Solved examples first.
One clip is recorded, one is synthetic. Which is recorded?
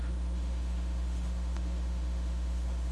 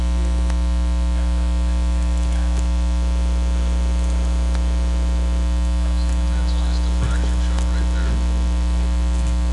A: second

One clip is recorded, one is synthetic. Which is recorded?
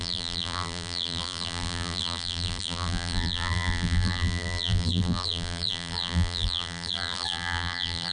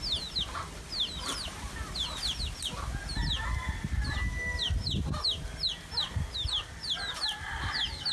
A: second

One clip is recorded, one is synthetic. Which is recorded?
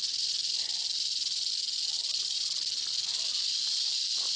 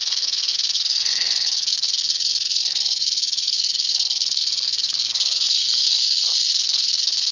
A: first